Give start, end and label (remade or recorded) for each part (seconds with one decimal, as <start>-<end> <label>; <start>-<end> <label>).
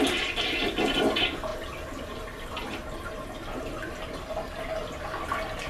0.0-5.7 recorded